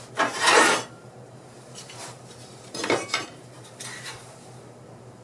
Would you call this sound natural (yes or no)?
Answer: no